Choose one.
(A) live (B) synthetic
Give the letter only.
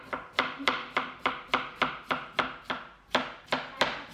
A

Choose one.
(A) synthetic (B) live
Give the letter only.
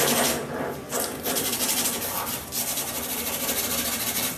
B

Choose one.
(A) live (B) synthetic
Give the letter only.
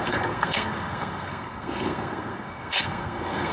B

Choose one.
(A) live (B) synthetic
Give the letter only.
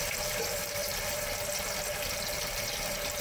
A